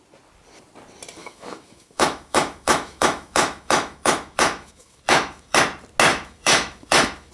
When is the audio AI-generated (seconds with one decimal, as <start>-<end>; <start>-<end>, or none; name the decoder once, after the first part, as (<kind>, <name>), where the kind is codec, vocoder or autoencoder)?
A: 1.2-5.6 (autoencoder, DAC-VAE); 6.1-7.3